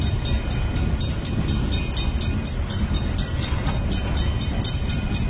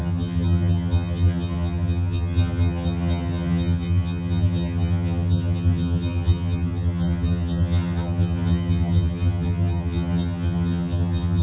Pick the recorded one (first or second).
first